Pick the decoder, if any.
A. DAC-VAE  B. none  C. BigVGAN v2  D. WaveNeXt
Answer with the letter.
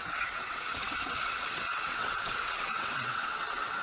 D